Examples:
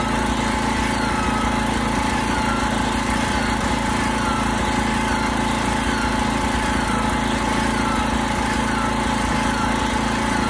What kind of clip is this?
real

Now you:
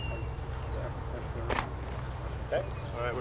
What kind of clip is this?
real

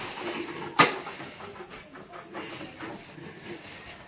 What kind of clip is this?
real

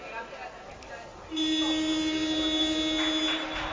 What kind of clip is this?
real